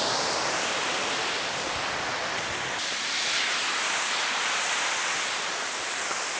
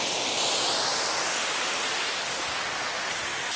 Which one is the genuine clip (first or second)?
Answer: second